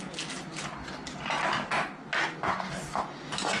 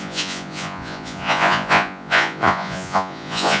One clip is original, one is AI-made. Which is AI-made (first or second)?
second